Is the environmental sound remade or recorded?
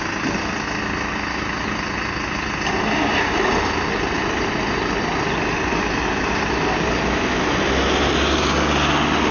recorded